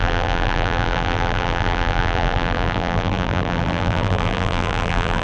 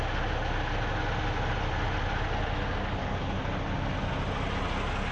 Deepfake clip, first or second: first